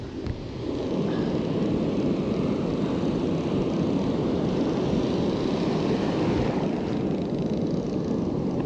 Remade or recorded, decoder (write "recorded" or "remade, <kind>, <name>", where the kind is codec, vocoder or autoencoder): recorded